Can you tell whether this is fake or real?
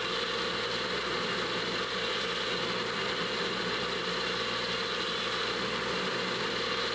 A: real